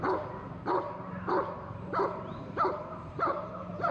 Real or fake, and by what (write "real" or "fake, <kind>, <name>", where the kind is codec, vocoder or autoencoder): fake, vocoder, BigVGAN v2